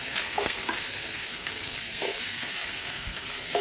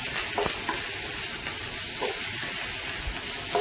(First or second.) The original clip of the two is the second